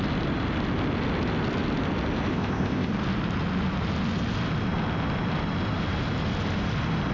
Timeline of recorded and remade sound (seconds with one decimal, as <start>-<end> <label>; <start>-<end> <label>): 0.0-2.3 recorded; 2.3-2.9 remade; 2.9-7.1 recorded